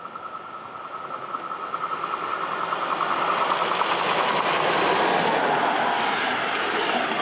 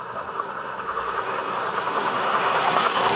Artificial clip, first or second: second